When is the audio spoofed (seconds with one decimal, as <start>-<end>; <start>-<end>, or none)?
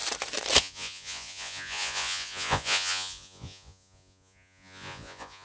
0.6-5.4